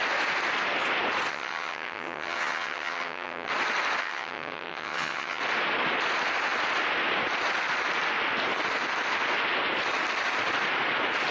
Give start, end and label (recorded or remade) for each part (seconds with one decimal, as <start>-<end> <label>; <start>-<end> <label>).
0.0-1.3 recorded; 1.3-3.5 remade; 3.5-4.0 recorded; 4.0-5.4 remade; 5.4-11.3 recorded